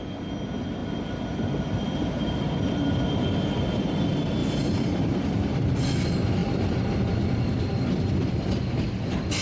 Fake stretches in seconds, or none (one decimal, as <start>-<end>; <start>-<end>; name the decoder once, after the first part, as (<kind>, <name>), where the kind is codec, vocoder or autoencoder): 0.8-2.4 (vocoder, BigVGAN v2); 4.4-5.6